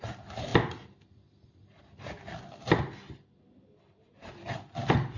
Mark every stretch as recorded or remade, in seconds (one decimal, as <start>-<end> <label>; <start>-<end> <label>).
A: 0.0-5.2 recorded